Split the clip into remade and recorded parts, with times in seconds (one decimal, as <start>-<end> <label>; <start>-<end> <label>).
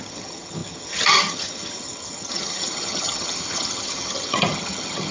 0.0-5.1 remade